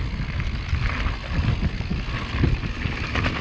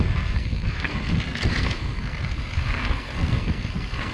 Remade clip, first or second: second